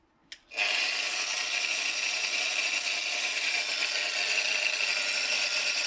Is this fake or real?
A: real